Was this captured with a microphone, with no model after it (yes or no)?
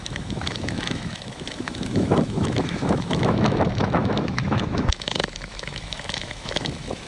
no